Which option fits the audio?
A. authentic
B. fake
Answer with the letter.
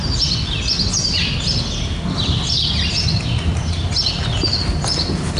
A